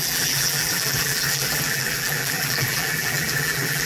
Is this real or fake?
fake